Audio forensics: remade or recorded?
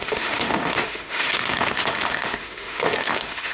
remade